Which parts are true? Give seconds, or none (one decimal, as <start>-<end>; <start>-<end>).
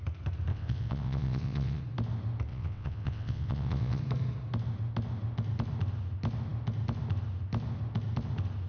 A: 0.0-0.5; 1.8-2.5; 4.0-8.7